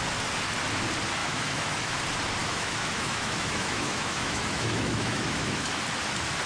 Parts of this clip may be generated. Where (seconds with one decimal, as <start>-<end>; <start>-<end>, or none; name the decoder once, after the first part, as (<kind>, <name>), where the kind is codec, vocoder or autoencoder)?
1.2-2.0 (autoencoder, DAC-VAE); 2.4-5.7